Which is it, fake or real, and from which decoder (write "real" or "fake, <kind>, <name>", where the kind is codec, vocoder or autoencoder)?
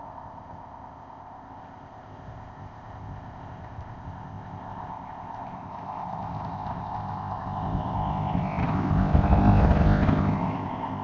fake, codec, ZipCodec